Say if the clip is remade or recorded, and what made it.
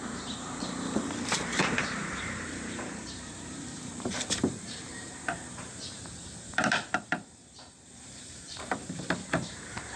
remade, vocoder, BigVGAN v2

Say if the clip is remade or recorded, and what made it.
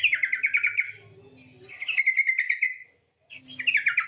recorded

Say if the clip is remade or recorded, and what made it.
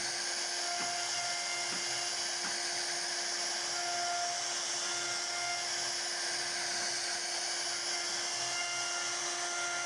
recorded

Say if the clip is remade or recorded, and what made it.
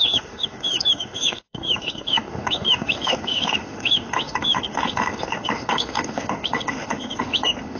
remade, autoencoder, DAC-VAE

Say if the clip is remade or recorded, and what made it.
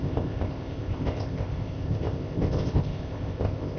remade, codec, ZipCodec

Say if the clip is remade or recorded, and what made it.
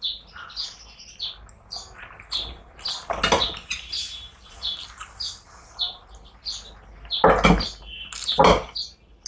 recorded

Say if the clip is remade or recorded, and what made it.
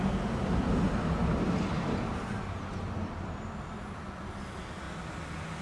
recorded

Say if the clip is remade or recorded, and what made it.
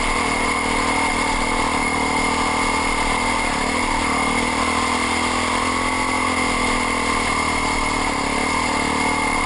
recorded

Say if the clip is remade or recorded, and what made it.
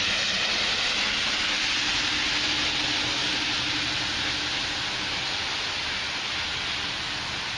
recorded